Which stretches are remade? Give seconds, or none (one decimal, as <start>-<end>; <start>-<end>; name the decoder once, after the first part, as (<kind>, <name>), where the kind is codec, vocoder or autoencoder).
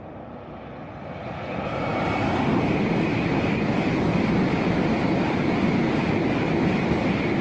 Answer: none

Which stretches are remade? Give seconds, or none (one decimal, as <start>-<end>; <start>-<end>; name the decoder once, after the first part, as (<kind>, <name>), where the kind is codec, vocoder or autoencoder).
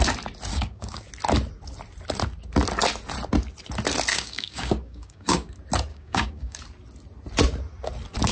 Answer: 0.5-1.1 (codec, DAC); 4.1-5.5; 5.9-6.6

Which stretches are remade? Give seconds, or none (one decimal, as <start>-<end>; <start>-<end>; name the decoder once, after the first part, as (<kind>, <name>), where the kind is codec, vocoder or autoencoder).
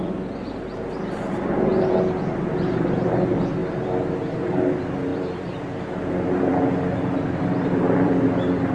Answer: 1.7-2.3 (vocoder, BigVGAN v2); 5.1-5.8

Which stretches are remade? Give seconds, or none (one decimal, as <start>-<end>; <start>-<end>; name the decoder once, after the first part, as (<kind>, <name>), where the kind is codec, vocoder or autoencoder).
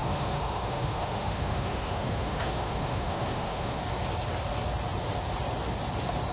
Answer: 0.0-3.8 (autoencoder, DAC-VAE)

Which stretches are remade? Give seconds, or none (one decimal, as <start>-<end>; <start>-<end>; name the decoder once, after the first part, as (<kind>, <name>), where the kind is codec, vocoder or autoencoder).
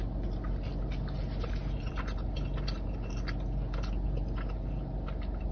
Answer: none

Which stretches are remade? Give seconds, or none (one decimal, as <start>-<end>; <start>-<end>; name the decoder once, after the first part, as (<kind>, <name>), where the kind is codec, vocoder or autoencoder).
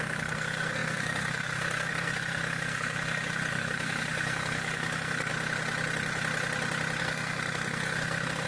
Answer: 0.0-5.3 (codec, SNAC); 7.0-8.5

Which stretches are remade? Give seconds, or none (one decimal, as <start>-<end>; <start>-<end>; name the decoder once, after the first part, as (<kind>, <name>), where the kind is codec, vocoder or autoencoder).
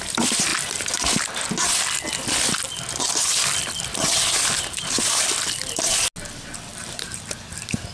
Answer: 6.7-7.2 (vocoder, BigVGAN v2)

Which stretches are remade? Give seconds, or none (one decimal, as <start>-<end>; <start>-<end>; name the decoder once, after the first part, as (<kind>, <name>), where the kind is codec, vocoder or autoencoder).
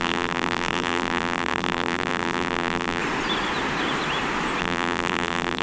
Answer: 0.0-3.0 (vocoder, BigVGAN v2); 4.6-5.6